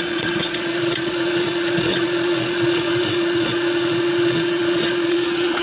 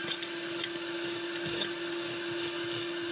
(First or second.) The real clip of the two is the second